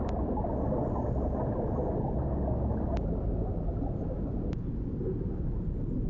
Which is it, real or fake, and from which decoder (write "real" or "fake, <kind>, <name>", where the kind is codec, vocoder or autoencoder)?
real